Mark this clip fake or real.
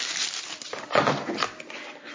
real